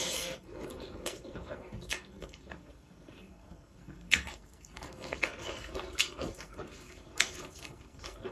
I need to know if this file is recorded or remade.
remade